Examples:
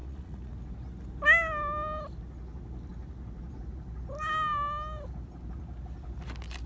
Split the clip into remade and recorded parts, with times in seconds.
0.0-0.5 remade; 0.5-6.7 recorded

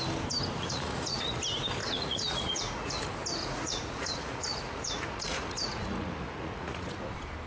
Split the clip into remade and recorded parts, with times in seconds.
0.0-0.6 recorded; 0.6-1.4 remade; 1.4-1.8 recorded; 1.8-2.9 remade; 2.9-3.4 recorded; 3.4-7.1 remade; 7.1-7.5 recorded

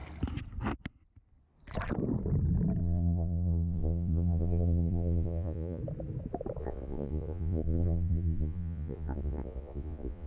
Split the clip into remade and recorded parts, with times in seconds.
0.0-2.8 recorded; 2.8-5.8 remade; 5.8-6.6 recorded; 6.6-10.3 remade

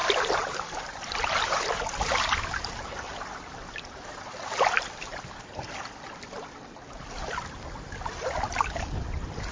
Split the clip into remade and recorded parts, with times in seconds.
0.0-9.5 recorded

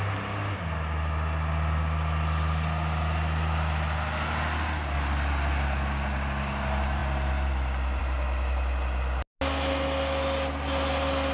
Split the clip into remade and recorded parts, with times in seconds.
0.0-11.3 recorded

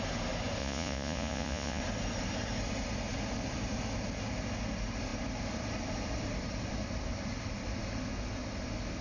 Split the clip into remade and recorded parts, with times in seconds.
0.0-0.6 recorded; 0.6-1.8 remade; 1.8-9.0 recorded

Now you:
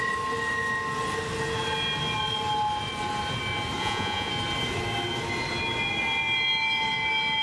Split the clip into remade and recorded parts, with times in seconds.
0.0-3.8 recorded; 3.8-4.3 remade; 4.3-7.4 recorded

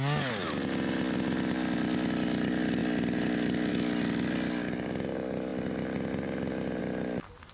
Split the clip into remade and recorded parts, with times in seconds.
0.0-7.5 recorded